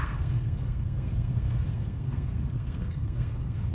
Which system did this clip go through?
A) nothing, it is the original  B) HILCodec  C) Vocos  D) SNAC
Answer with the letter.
D